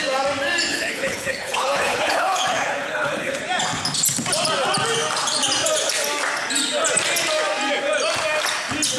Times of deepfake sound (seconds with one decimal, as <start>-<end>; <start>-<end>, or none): 0.7-3.4